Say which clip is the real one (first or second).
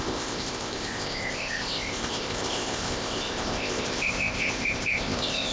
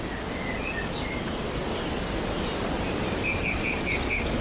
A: second